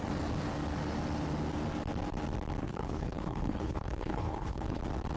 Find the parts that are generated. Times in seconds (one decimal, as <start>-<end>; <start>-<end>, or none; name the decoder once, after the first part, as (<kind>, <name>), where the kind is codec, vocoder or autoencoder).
2.6-4.8 (codec, HILCodec)